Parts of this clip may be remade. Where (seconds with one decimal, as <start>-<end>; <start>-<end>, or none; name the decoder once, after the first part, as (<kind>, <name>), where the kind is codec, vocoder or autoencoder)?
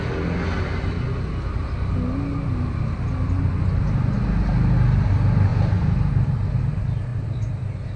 none